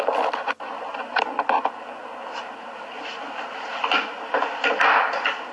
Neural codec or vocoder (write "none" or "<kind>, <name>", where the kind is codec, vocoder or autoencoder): none